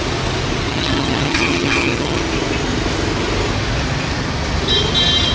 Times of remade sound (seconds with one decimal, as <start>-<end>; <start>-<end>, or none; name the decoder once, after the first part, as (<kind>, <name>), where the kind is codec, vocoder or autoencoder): 0.7-2.2 (vocoder, HiFi-GAN)